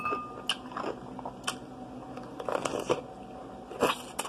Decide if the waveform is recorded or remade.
recorded